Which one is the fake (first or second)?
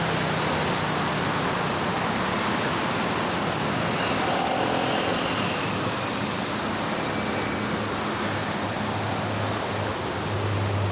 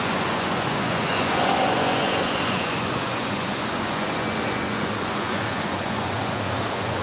second